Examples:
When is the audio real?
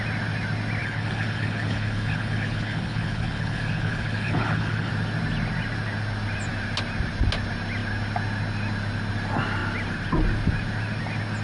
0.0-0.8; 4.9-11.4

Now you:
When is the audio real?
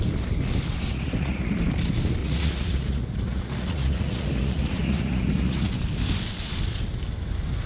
0.0-0.9; 1.5-2.2; 5.7-7.7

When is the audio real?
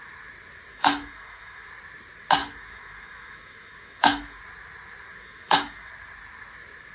0.0-0.7; 1.7-2.4; 4.4-5.1; 5.9-6.9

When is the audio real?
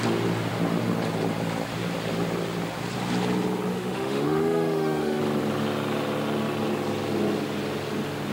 0.0-3.7; 5.2-8.3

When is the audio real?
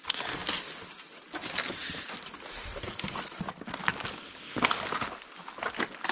0.0-6.1